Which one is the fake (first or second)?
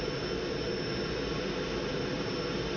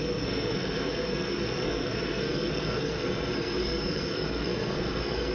second